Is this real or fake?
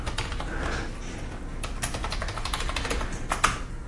real